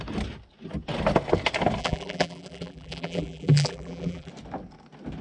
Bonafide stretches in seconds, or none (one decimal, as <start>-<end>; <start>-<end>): 0.0-1.8; 4.3-5.2